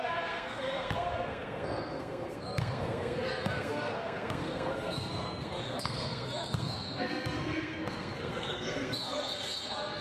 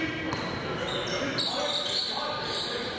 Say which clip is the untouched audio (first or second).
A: second